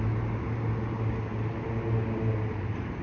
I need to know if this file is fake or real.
real